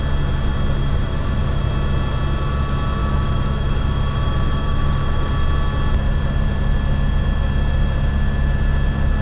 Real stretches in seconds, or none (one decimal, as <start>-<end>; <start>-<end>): 0.0-0.8; 1.6-3.0; 5.3-9.2